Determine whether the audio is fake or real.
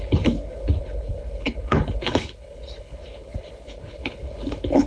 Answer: fake